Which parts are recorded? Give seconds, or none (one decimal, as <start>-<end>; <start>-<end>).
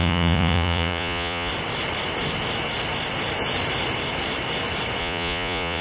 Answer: 1.5-5.0